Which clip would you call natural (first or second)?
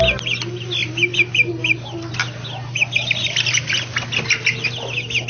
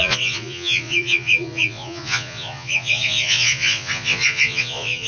first